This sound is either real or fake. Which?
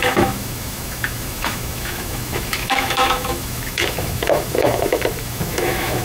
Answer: fake